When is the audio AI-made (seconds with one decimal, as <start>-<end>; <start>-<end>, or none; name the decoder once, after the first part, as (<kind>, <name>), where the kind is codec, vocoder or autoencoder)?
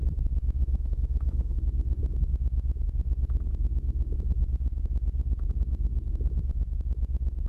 0.6-1.6 (autoencoder, DAC-VAE)